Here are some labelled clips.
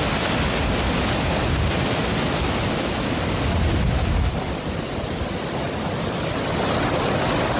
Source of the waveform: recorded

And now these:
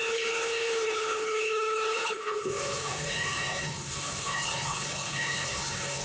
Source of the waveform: remade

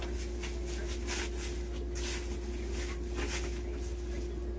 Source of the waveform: recorded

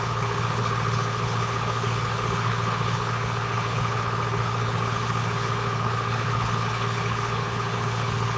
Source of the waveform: remade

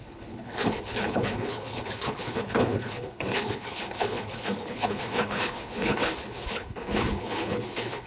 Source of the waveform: remade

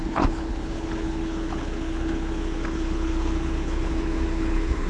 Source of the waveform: remade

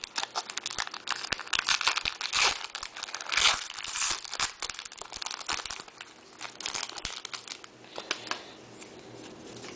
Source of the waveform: recorded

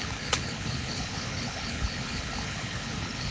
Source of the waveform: remade